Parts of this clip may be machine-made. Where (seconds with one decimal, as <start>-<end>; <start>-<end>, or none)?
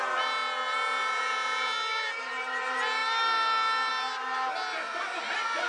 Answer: none